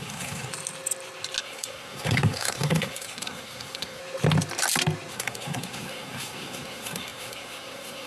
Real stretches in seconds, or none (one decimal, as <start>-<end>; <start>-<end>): 0.5-1.4; 4.0-5.1